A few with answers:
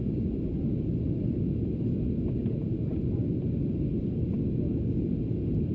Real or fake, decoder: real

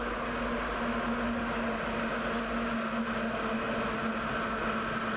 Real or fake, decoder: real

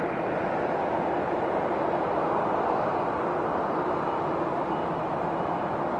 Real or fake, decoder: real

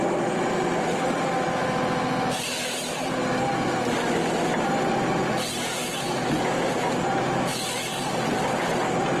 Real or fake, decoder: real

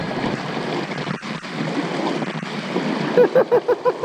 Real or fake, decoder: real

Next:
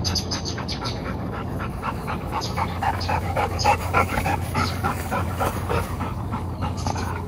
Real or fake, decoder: fake, codec, DAC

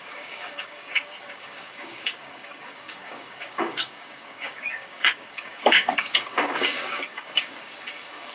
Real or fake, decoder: fake, codec, DAC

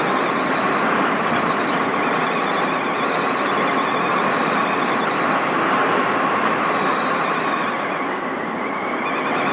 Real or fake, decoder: real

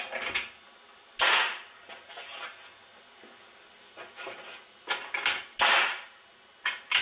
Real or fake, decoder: real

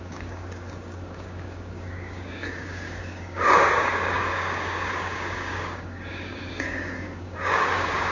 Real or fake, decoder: fake, codec, DAC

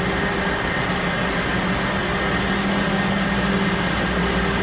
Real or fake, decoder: real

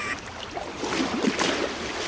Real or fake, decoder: real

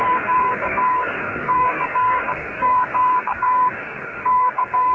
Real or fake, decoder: fake, codec, DAC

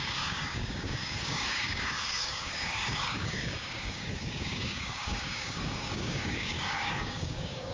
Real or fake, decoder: fake, codec, DAC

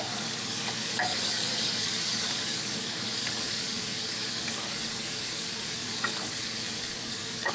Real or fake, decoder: fake, codec, DAC